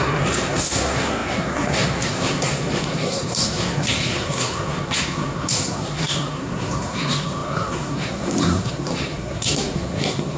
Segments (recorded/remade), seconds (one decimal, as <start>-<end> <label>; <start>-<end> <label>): 0.0-10.4 remade